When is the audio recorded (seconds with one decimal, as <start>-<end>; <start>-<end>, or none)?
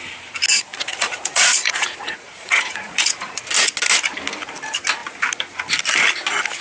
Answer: 0.0-0.7; 3.4-6.6